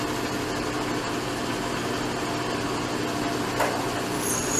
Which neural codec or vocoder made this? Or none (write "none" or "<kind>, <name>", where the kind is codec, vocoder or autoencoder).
none